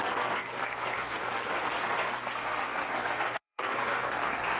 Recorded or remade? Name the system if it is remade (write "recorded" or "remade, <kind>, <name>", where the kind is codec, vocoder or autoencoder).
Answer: remade, codec, SNAC